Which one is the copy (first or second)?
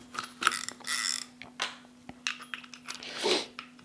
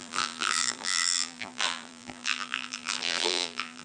second